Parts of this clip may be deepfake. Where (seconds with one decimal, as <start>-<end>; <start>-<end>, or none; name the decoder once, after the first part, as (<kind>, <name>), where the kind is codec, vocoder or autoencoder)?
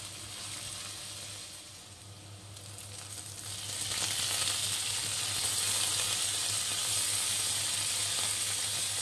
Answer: 1.4-2.0 (vocoder, Vocos)